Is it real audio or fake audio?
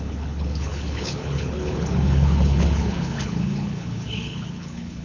fake